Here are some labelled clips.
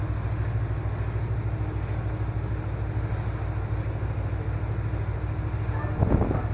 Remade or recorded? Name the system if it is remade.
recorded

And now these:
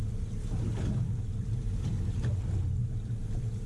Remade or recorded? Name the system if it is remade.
recorded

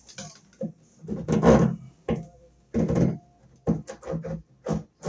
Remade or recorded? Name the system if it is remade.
recorded